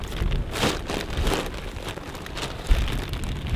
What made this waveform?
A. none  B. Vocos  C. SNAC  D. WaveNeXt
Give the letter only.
A